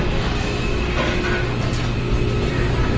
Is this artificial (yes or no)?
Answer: no